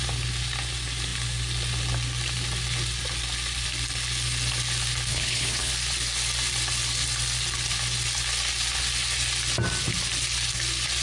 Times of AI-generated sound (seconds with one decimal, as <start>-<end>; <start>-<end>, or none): 5.1-5.7